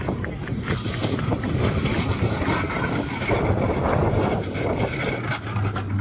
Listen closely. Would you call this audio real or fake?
real